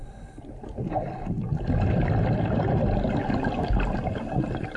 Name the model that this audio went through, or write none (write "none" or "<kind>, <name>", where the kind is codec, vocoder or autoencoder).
none